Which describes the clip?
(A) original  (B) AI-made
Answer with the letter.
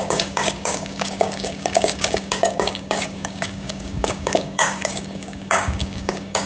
B